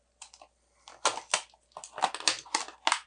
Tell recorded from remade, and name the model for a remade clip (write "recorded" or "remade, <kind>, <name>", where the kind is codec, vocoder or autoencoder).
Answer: recorded